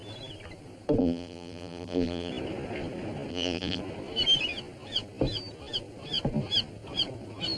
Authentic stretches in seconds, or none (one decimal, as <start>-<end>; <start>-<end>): 0.0-1.0; 2.3-3.3; 3.8-7.6